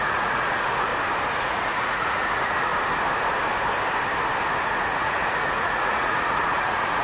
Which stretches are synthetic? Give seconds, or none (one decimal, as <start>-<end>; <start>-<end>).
0.0-0.9; 1.4-2.7; 4.6-7.0